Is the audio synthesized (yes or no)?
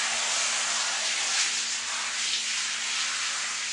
no